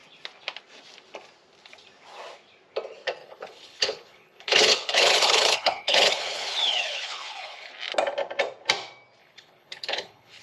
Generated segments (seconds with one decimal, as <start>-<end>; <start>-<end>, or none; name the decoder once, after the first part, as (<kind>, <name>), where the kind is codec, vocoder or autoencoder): 3.2-7.7 (codec, HILCodec); 9.2-10.4